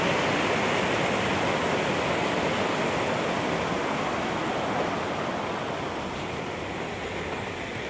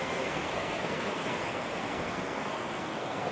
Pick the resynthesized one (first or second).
second